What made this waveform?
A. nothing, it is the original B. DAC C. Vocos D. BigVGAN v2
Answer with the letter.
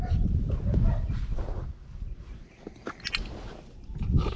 A